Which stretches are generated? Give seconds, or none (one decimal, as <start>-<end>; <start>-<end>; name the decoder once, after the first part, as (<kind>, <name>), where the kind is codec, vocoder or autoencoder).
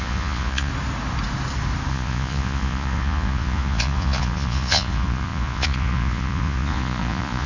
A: 0.0-0.7 (vocoder, Vocos); 1.9-7.5